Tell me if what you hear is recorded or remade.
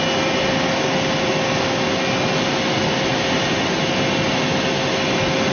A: recorded